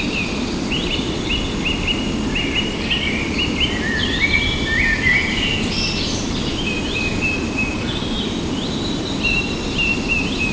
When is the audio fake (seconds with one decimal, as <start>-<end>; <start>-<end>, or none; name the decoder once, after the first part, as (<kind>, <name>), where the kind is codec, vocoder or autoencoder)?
none